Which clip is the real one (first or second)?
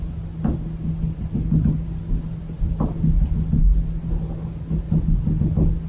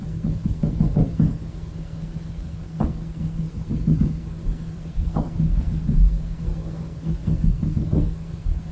first